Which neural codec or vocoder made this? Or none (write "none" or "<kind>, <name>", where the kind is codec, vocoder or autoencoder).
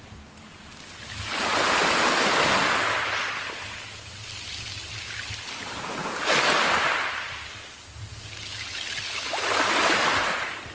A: none